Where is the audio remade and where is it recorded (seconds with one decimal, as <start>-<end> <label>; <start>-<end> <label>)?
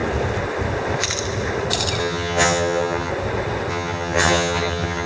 0.0-2.0 recorded; 2.0-3.1 remade; 3.1-3.7 recorded; 3.7-5.1 remade